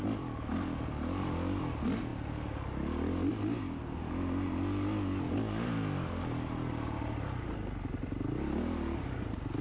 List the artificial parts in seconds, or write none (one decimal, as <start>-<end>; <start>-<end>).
none